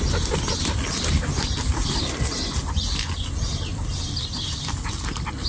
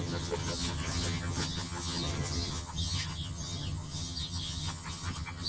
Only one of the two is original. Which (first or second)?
first